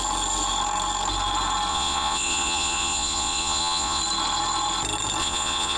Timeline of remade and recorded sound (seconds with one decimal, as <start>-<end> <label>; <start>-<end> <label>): 0.0-1.7 recorded; 1.7-4.0 remade; 4.0-5.2 recorded; 5.2-5.8 remade